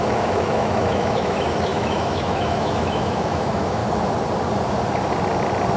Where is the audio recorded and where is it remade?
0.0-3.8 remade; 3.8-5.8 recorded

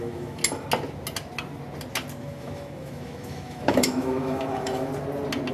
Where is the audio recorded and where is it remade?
0.0-0.4 remade; 0.4-2.2 recorded; 2.2-4.9 remade; 4.9-5.5 recorded

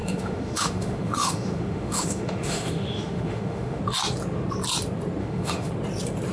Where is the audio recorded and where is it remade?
0.0-3.8 remade; 3.8-5.2 recorded; 5.2-5.7 remade; 5.7-6.3 recorded

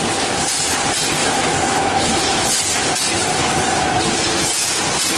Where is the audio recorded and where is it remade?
0.0-1.2 recorded; 1.2-2.6 remade; 2.6-3.4 recorded; 3.4-4.0 remade; 4.0-5.2 recorded

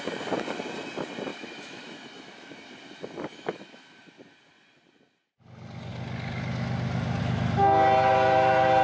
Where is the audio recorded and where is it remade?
0.0-1.3 recorded; 1.3-2.3 remade; 2.3-3.3 recorded; 3.3-4.0 remade; 4.0-8.8 recorded

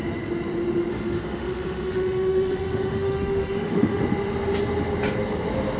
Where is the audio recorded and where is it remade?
0.0-0.9 recorded; 0.9-4.0 remade; 4.0-5.8 recorded